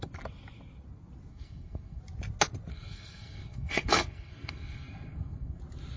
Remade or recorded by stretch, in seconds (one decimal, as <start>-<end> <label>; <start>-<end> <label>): 0.0-1.3 recorded; 1.3-2.0 remade; 2.0-2.7 recorded; 2.7-5.6 remade; 5.6-6.0 recorded